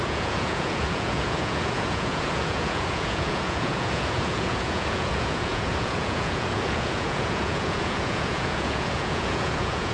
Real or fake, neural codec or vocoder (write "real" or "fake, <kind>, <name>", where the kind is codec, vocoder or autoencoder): fake, vocoder, Vocos